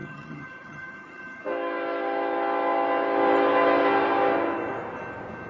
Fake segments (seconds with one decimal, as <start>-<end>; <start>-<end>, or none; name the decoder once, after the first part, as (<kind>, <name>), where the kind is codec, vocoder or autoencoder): 0.0-1.4 (vocoder, HiFi-GAN)